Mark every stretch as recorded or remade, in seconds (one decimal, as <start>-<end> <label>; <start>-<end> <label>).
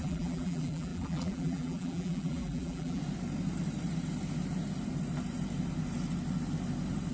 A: 0.0-3.0 remade; 3.0-7.1 recorded